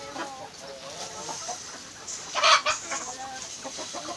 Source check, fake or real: real